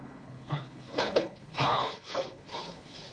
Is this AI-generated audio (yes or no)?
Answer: yes